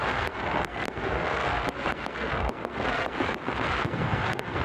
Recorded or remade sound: remade